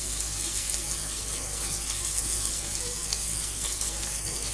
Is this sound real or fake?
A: fake